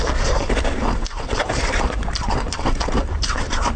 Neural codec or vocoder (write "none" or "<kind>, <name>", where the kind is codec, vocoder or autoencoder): vocoder, BigVGAN v2